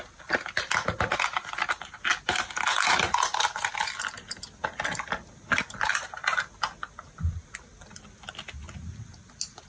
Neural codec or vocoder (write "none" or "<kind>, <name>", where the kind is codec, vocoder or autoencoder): none